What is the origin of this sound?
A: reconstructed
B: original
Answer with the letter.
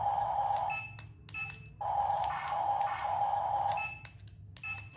B